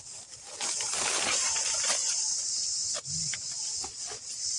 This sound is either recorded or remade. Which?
recorded